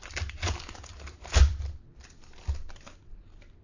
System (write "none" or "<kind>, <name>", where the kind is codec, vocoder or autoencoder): none